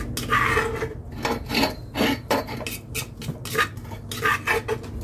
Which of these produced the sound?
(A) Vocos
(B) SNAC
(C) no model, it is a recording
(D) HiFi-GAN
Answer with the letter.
C